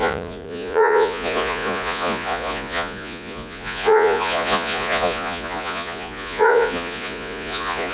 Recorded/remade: remade